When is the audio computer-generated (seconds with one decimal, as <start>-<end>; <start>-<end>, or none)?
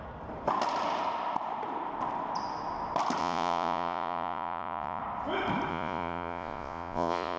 3.2-5.0; 5.7-7.4